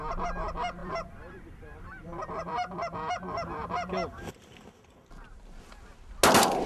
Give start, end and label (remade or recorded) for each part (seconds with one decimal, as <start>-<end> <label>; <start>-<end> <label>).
0.0-0.8 recorded; 0.8-2.8 remade; 2.8-6.7 recorded